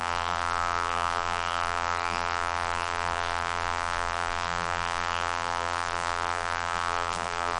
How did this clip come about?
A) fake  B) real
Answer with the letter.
A